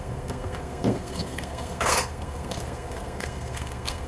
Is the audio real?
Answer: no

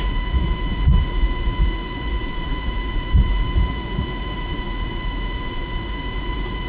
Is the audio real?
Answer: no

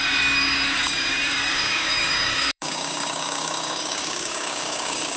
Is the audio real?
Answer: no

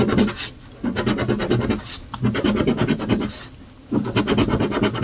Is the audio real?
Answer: yes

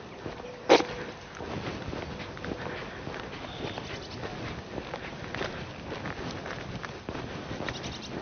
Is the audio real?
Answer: yes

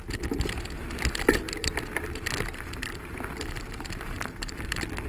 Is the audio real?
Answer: yes